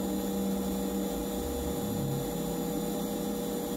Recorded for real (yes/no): yes